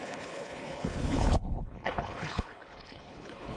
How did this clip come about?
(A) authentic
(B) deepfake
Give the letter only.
B